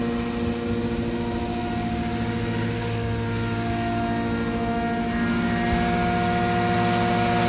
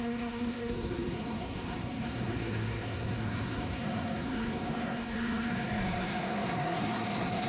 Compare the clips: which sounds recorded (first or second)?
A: first